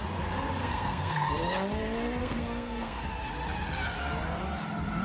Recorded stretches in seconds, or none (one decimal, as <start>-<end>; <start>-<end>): 0.0-0.6; 1.3-2.2; 3.0-5.0